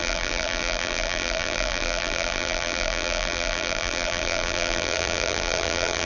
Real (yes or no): no